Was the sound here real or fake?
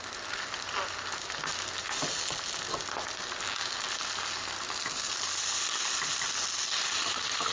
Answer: real